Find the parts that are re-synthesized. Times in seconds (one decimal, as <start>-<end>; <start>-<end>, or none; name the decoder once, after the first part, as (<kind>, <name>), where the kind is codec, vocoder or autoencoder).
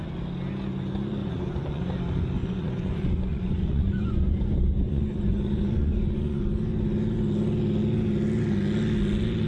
1.2-1.8 (vocoder, Vocos); 2.4-6.4